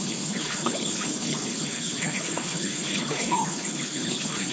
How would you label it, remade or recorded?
remade